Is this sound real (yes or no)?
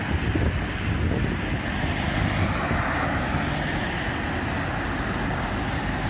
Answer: yes